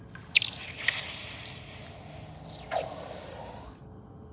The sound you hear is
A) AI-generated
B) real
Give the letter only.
B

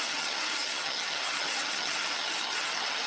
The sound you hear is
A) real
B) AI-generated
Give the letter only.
B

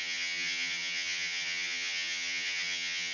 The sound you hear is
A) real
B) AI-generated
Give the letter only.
B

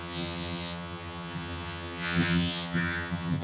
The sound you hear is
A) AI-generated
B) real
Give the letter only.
A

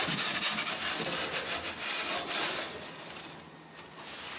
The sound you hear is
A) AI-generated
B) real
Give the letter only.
B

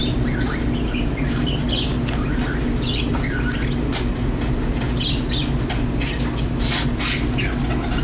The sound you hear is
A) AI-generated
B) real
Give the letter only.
B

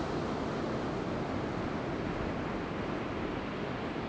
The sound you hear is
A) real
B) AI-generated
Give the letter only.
A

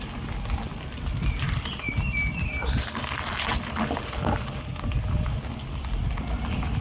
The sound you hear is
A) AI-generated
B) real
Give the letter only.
B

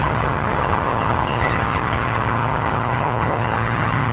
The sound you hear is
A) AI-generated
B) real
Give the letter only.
A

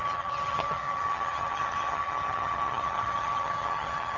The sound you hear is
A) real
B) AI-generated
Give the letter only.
B